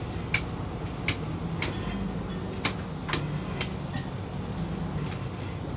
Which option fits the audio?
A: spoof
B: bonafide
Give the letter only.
B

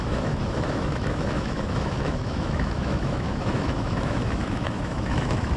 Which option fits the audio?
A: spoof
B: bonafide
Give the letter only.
A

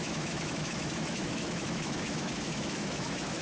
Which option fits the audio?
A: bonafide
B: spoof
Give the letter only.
B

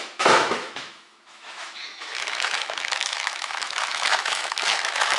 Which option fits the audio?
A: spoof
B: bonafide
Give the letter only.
A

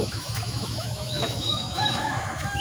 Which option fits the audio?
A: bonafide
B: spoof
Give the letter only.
B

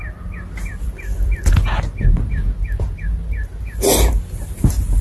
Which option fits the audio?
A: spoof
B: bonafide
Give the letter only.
B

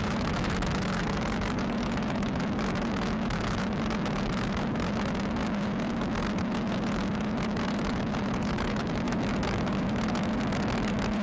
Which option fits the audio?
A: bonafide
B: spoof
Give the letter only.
B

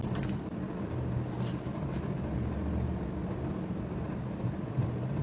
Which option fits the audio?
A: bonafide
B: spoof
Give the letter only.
A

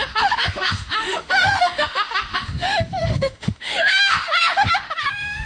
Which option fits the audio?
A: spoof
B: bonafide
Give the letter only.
A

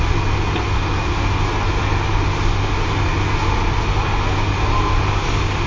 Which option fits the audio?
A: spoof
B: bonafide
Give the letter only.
B